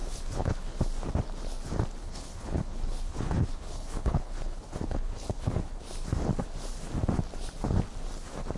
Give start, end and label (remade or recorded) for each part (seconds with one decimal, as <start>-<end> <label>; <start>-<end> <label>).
0.0-0.8 remade; 0.8-2.0 recorded; 2.0-5.8 remade; 5.8-8.6 recorded